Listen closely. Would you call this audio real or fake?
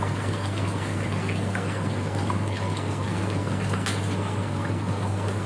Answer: fake